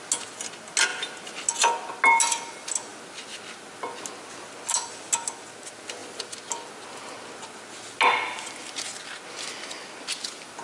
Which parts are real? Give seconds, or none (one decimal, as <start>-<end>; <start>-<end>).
0.0-10.6